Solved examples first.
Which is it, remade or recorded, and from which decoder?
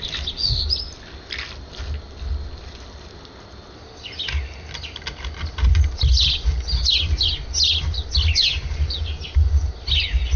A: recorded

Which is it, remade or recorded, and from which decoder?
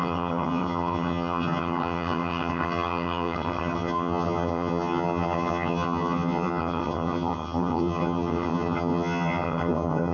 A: remade, vocoder, HiFi-GAN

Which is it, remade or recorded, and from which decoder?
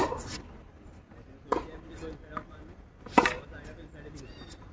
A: recorded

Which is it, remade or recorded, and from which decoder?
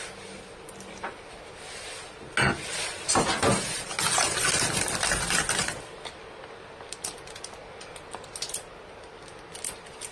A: recorded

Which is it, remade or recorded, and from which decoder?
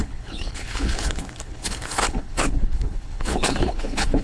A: remade, codec, HILCodec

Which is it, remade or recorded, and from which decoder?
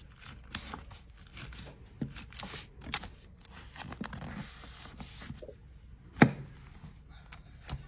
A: recorded